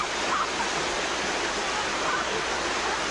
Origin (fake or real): real